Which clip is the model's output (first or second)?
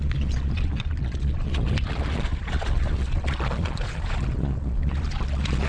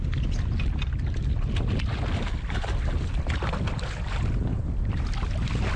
first